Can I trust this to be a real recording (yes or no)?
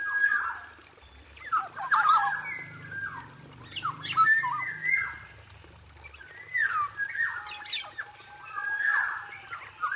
yes